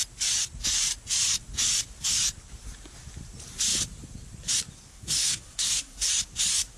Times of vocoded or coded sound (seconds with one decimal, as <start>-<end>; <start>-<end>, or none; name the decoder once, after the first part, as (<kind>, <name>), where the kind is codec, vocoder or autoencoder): 4.9-6.1 (codec, SNAC)